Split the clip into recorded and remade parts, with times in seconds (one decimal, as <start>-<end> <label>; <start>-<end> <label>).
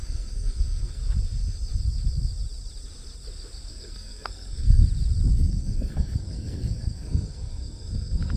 0.0-1.0 remade; 1.0-3.7 recorded; 3.7-4.8 remade; 4.8-5.3 recorded; 5.3-8.4 remade